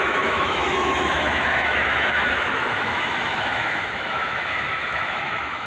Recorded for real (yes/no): no